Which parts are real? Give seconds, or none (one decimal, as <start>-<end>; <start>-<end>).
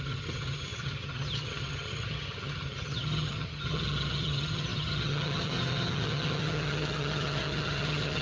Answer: none